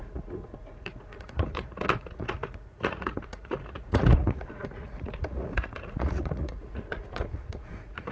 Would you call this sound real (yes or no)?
no